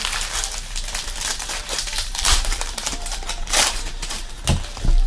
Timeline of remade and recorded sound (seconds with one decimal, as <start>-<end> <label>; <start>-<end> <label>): 0.0-1.3 recorded; 1.3-4.4 remade; 4.4-5.1 recorded